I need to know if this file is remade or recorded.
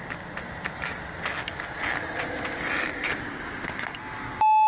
recorded